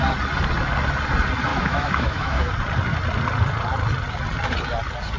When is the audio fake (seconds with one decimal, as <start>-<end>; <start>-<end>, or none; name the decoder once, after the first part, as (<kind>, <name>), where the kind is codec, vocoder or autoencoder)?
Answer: 1.5-2.5 (autoencoder, DAC-VAE)